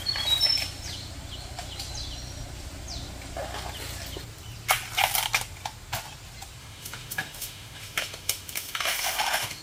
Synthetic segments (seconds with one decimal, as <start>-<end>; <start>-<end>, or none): 6.6-9.6

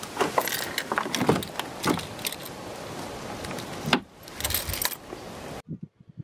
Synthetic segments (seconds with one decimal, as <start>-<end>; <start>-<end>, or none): none

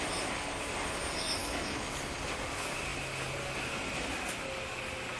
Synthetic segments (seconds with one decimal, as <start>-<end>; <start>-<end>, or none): 1.4-1.9

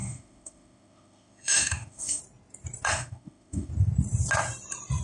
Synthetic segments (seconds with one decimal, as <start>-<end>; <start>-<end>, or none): 0.0-2.2; 2.9-3.7

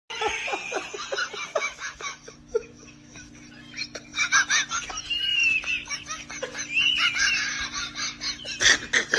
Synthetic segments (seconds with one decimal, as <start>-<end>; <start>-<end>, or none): 1.5-3.3

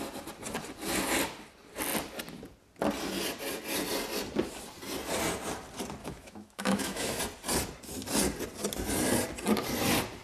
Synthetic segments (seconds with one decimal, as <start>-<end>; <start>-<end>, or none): 6.0-7.2

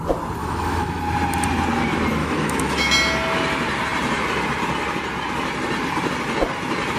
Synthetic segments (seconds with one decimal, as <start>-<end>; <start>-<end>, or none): 0.4-1.0; 2.2-2.9

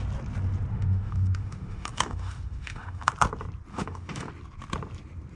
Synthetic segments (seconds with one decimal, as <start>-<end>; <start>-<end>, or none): 0.7-3.1; 3.7-4.3